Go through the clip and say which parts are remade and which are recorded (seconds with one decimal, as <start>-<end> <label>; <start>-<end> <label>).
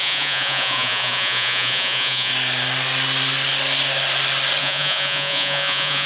0.0-2.3 remade; 2.3-4.6 recorded; 4.6-6.1 remade